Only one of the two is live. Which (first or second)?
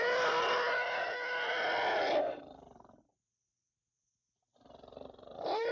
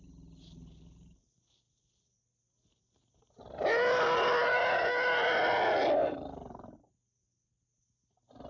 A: second